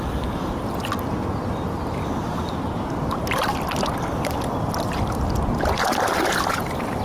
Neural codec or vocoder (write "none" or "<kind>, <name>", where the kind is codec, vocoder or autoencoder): none